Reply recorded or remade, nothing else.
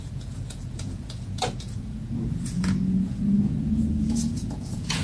remade